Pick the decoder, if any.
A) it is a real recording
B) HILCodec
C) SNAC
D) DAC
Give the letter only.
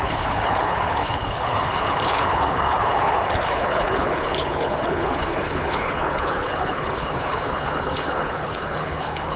B